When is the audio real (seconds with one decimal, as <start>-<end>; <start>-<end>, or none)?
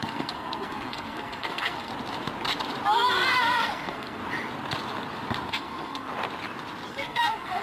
1.9-3.4; 4.2-5.5; 6.1-6.9